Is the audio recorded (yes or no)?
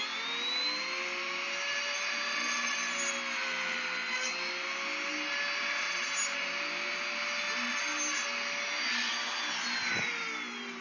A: yes